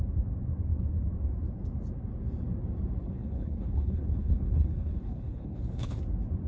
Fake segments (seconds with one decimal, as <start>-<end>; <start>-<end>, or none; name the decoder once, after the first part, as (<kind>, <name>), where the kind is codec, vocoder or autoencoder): 3.0-6.0 (codec, HILCodec)